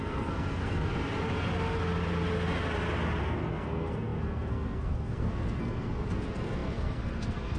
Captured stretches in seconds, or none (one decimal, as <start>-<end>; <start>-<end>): 0.9-3.2